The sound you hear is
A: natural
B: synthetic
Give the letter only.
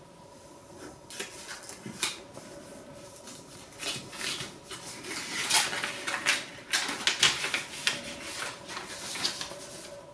A